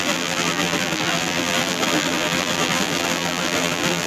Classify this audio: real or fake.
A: fake